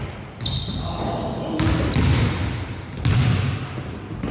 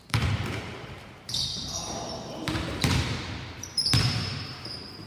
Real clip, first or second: first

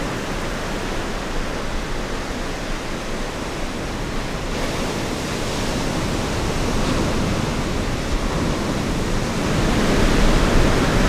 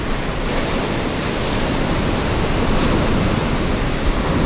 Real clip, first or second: first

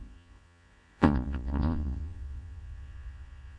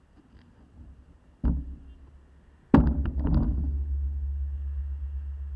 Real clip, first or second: second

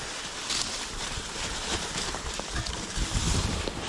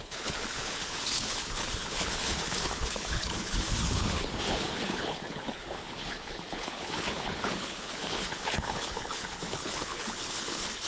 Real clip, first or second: first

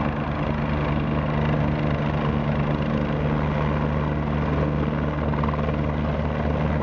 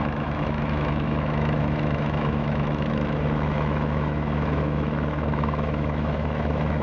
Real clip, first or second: first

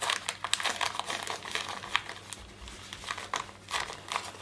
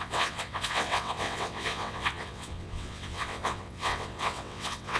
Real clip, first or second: first